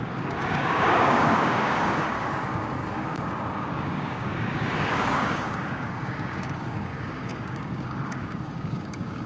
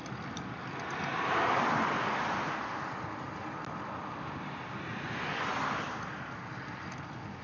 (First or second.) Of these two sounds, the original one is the second